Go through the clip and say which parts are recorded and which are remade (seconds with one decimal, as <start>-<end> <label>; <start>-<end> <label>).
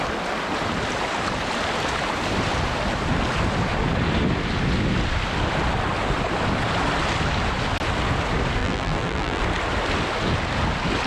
0.0-8.6 recorded; 8.6-9.4 remade; 9.4-11.1 recorded